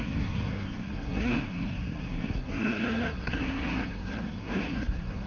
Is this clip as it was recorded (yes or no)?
no